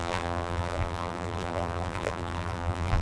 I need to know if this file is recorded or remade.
remade